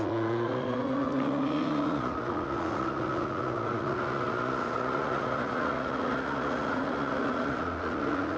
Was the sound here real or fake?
fake